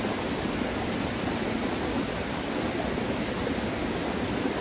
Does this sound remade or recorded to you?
recorded